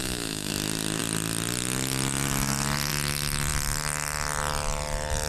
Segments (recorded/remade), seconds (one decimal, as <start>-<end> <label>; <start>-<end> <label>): 0.0-0.5 remade; 0.5-5.3 recorded